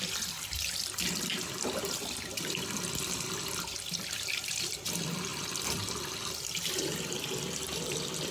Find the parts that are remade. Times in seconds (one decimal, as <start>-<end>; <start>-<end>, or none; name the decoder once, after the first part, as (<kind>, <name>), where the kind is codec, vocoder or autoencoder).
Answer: 0.0-5.3 (vocoder, BigVGAN v2); 6.4-8.3